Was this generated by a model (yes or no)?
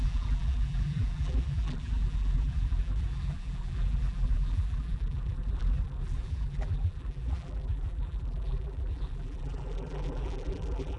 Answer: yes